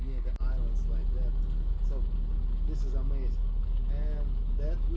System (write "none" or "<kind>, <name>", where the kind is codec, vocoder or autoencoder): none